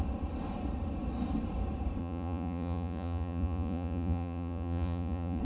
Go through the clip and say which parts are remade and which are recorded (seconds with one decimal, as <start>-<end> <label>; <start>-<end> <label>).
0.0-2.0 recorded; 2.0-5.4 remade